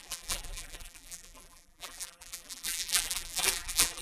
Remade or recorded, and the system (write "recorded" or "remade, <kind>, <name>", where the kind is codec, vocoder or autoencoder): remade, vocoder, BigVGAN v2